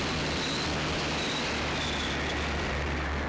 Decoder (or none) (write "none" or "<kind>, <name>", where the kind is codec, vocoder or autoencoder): none